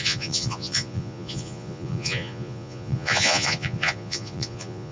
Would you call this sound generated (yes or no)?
yes